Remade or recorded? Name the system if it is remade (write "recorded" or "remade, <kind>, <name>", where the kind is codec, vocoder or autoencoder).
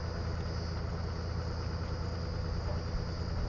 recorded